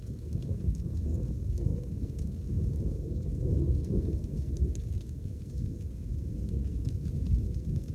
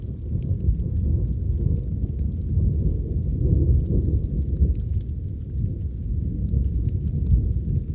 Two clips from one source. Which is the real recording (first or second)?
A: second